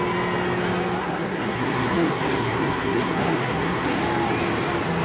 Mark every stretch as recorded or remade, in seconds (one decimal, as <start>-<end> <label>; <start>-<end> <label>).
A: 0.0-1.0 recorded; 1.0-4.0 remade; 4.0-5.0 recorded